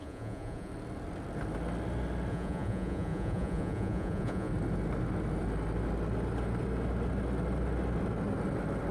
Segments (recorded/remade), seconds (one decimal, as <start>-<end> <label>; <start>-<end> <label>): 0.0-0.7 remade; 0.7-2.3 recorded; 2.3-4.5 remade; 4.5-8.9 recorded